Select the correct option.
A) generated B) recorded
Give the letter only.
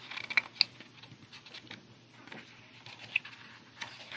B